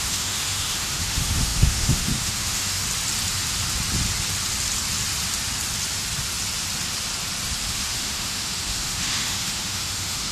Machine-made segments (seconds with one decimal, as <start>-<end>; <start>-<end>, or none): 0.0-2.8; 7.7-10.3